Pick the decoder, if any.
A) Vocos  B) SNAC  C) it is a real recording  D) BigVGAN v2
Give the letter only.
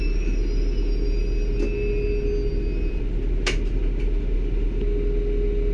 C